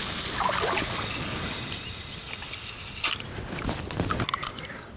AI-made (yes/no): no